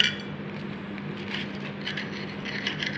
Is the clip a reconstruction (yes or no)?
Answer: no